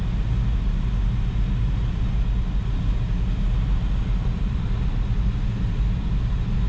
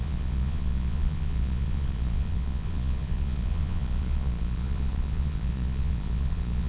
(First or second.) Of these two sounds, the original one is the first